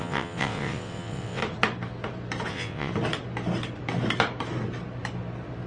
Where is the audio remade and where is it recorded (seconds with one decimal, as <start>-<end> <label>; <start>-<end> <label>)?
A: 0.0-1.4 remade; 1.4-2.5 recorded; 2.5-2.9 remade; 2.9-5.7 recorded